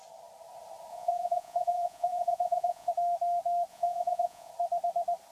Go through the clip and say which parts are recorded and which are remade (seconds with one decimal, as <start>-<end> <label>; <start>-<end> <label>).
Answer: 0.0-0.9 recorded; 0.9-2.9 remade; 2.9-3.7 recorded; 3.7-4.5 remade; 4.5-5.3 recorded